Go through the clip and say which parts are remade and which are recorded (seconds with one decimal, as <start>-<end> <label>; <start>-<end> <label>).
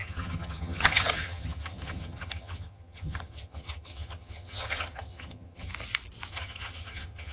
0.0-5.7 remade; 5.7-6.3 recorded; 6.3-7.3 remade